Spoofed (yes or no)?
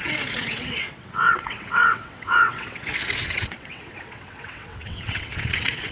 yes